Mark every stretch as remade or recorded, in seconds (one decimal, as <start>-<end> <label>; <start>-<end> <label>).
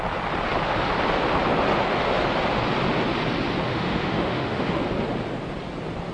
0.0-3.7 recorded; 3.7-4.8 remade; 4.8-6.1 recorded